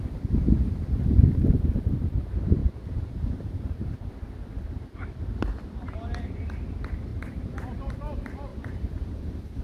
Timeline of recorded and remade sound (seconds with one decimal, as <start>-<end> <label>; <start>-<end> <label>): 0.0-2.6 recorded; 2.6-4.1 remade; 4.1-7.1 recorded; 7.1-7.7 remade; 7.7-8.5 recorded; 8.5-9.6 remade